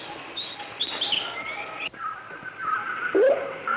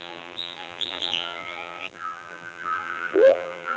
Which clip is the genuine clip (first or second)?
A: first